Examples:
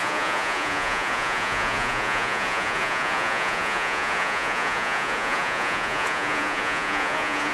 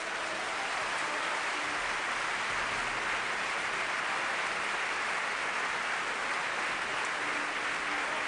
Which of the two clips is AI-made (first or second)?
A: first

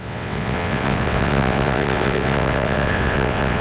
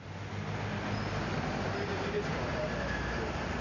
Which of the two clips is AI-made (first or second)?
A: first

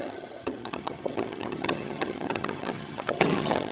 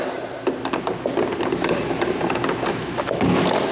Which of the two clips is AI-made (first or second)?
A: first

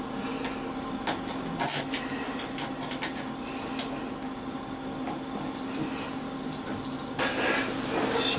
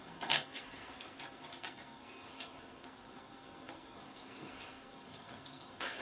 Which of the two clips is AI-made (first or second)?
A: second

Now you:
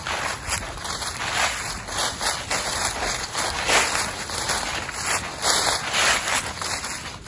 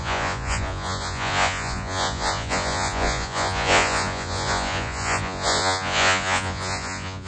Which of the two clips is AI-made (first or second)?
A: second